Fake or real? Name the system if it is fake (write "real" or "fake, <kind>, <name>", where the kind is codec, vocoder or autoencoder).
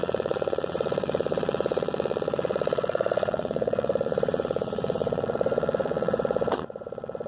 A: fake, vocoder, WaveNeXt